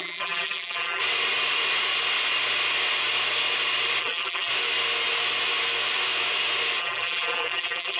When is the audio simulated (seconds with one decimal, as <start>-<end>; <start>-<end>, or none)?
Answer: 0.0-1.0; 4.0-4.5; 6.8-8.0